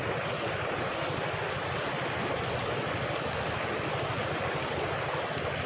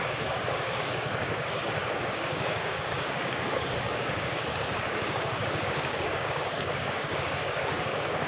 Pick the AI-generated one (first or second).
second